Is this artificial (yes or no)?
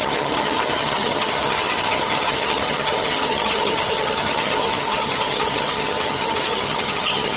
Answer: yes